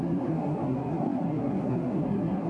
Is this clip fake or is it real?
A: fake